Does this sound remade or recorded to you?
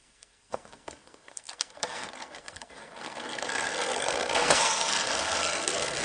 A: remade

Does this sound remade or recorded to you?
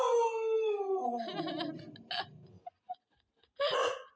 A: recorded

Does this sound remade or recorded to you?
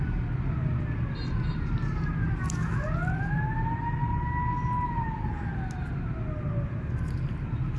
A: recorded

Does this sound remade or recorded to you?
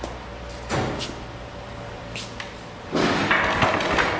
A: recorded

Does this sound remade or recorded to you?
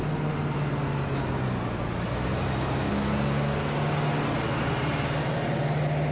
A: recorded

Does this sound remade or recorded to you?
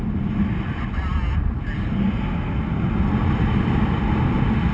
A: recorded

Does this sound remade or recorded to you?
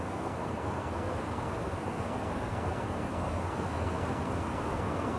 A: remade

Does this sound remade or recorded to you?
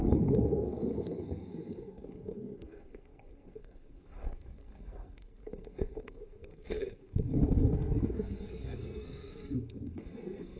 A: remade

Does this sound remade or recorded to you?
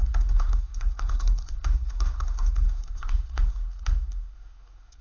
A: remade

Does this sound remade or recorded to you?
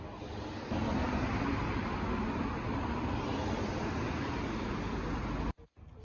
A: recorded